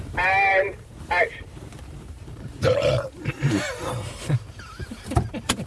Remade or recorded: remade